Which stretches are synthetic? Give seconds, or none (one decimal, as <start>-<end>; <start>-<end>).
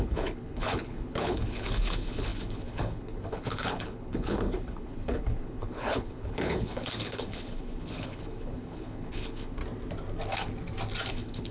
0.0-9.6; 11.1-11.5